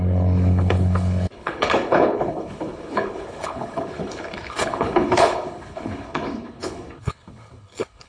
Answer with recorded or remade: remade